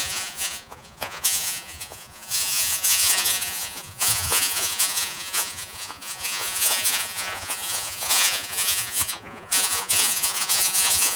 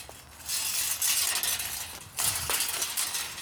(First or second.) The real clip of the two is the second